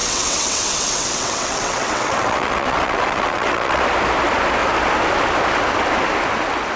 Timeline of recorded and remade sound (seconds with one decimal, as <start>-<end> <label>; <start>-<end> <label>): 0.0-3.8 remade; 3.8-6.8 recorded